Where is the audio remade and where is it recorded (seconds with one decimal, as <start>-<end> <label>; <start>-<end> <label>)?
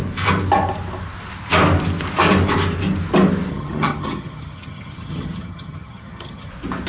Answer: 0.0-3.5 recorded; 3.5-6.5 remade; 6.5-6.9 recorded